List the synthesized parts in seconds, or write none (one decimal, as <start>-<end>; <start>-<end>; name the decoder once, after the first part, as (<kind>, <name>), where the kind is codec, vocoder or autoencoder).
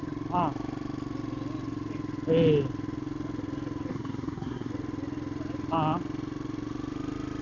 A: 3.9-4.7 (codec, SNAC)